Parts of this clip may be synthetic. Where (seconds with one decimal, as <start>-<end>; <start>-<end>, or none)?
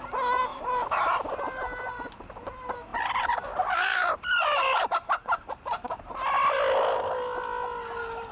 0.5-1.3; 2.9-6.1